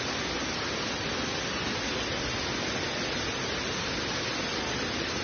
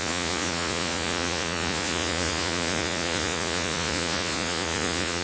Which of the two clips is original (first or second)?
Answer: first